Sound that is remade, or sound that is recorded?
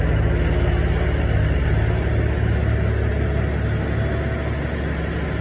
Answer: recorded